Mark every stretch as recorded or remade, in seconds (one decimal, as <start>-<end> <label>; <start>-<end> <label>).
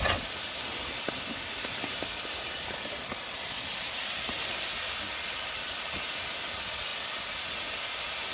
0.0-8.3 recorded